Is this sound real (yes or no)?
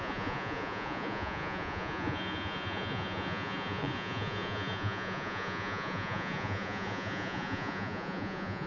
no